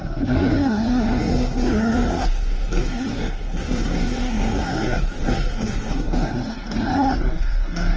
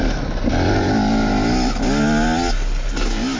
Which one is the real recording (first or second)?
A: second